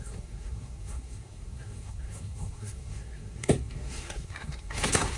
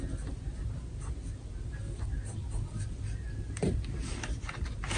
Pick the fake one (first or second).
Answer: first